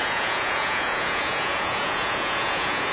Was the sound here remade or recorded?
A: remade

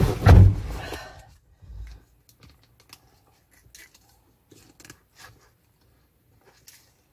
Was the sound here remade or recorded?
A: recorded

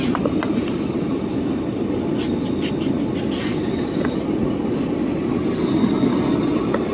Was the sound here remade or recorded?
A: recorded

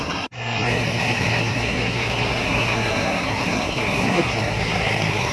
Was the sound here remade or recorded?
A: remade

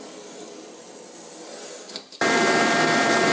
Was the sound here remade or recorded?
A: remade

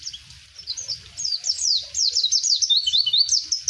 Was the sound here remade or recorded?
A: recorded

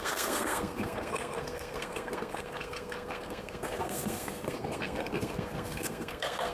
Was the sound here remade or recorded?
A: remade